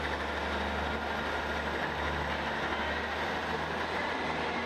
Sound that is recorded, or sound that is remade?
recorded